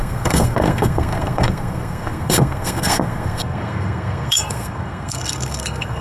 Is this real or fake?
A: fake